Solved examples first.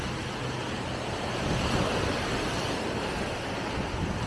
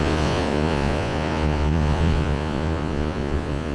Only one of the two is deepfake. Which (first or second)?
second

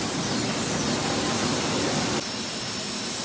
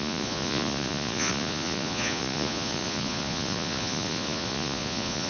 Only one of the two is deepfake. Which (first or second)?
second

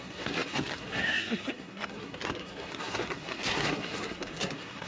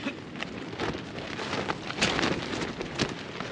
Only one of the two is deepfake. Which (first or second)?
first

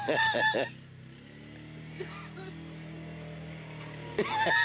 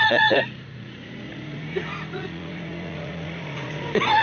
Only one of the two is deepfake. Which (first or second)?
second